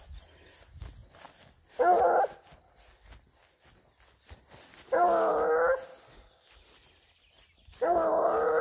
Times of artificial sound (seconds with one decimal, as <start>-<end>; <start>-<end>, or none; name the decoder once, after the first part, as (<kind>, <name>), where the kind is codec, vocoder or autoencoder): none

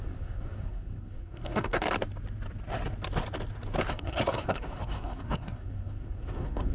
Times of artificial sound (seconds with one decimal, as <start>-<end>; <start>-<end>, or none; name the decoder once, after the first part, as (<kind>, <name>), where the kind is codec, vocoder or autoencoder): 0.0-1.8 (codec, SNAC); 3.9-6.7

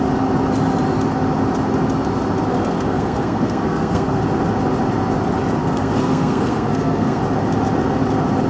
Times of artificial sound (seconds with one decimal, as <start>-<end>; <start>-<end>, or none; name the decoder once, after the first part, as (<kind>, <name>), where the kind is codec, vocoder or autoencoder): 2.5-4.2 (codec, SNAC); 5.6-7.2

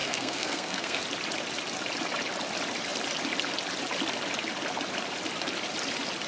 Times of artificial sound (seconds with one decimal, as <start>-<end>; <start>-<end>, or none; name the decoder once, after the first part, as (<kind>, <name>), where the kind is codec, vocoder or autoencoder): 0.0-1.0 (codec, SNAC)

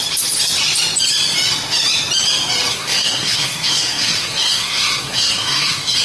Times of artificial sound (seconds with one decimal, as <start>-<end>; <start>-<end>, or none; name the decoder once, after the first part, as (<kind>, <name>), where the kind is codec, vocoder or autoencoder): 2.7-6.0 (codec, SNAC)

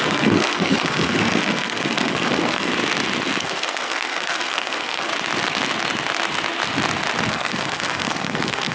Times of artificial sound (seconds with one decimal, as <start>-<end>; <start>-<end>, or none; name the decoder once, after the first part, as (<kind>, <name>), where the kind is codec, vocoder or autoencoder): 0.0-2.7 (codec, SNAC); 3.4-5.1; 7.3-8.7

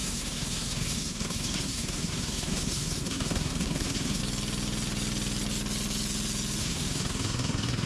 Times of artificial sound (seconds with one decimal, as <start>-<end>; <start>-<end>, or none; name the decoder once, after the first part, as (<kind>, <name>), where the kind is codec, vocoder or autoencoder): 0.0-4.2 (codec, SNAC); 6.6-7.9